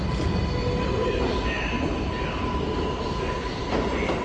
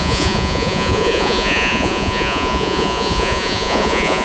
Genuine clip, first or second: first